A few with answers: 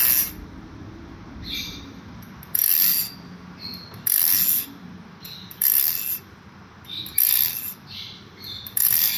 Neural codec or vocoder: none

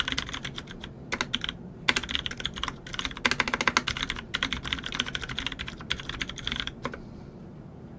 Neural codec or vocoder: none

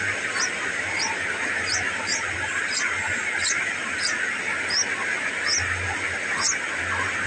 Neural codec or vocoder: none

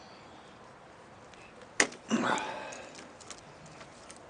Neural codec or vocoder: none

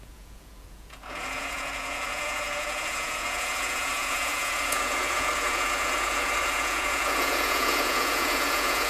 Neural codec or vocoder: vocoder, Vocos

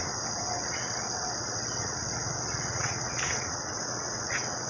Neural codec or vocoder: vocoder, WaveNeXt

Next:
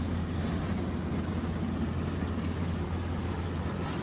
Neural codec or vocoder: none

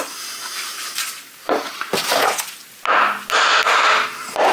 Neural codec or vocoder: none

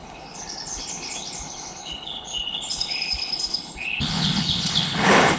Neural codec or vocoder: codec, HILCodec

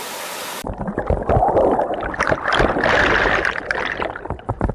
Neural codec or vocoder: vocoder, BigVGAN v2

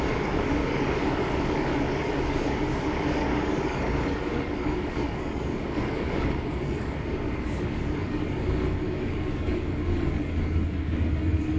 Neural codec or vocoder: codec, DAC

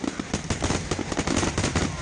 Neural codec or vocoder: none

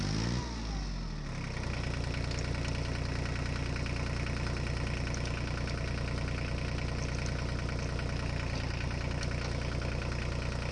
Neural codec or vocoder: none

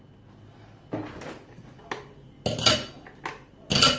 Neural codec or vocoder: none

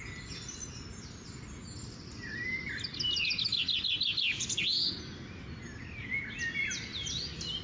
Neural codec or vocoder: none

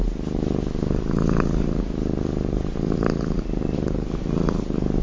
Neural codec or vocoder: none